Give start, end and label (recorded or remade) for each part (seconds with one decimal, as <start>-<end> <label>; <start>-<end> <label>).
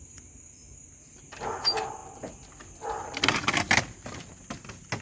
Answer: 0.0-5.0 recorded